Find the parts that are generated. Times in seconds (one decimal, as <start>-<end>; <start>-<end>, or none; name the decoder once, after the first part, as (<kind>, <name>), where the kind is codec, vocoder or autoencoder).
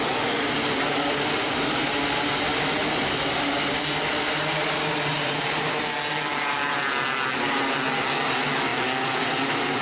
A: none